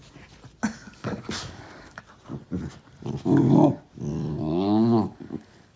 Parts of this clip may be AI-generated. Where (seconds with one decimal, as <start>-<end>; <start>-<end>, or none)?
0.8-2.0; 4.1-5.8